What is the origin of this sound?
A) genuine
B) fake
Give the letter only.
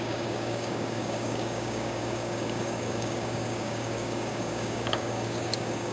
B